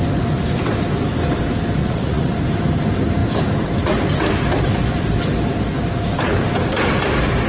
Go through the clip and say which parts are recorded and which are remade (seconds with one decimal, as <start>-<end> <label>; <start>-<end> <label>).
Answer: 0.0-1.8 recorded; 1.8-2.4 remade; 2.4-7.5 recorded